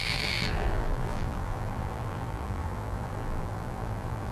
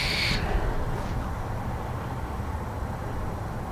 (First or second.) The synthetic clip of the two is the first